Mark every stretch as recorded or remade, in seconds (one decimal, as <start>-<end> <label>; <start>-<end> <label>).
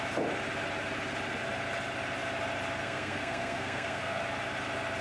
0.0-2.8 recorded; 2.8-4.2 remade; 4.2-5.0 recorded